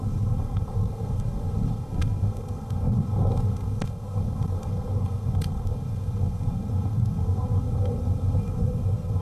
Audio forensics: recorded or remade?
remade